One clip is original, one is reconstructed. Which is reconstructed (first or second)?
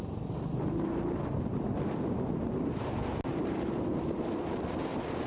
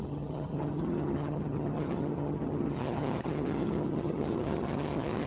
second